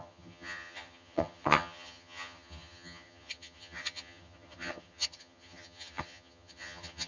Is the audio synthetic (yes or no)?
yes